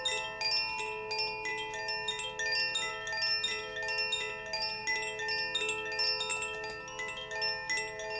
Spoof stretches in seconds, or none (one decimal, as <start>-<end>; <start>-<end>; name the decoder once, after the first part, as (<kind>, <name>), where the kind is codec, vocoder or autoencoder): none